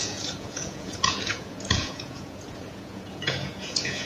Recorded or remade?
remade